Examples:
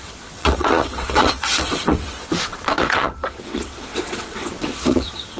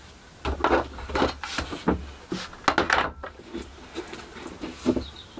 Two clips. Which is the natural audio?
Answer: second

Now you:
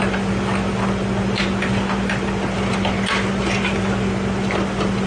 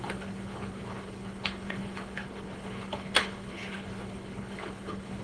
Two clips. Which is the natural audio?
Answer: first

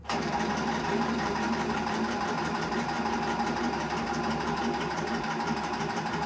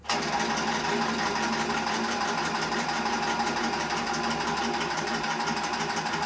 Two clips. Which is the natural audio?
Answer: second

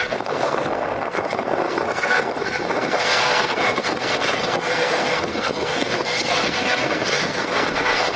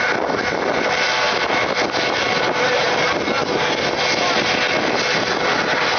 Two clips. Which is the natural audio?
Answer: second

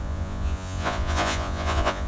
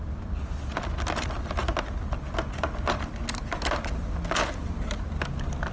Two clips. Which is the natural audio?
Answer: second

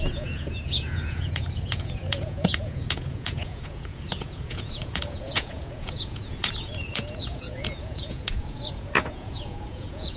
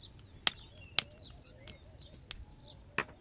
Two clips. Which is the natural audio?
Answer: second